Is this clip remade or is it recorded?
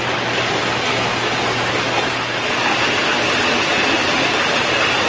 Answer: recorded